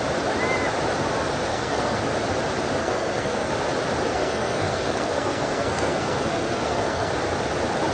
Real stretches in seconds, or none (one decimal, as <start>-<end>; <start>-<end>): 0.0-1.5; 2.0-2.8; 3.5-4.1; 7.1-7.9